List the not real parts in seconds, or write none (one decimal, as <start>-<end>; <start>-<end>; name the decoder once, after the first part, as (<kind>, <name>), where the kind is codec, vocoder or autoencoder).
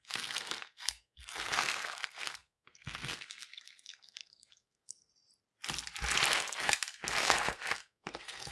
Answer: 0.0-5.1 (codec, SNAC); 6.3-8.5